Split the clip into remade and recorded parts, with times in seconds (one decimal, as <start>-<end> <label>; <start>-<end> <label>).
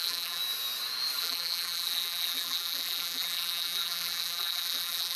0.0-0.4 remade; 0.4-1.2 recorded; 1.2-5.2 remade